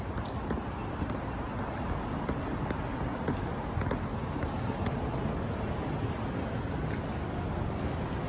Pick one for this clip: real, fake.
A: real